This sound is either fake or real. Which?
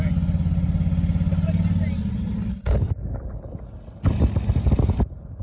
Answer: real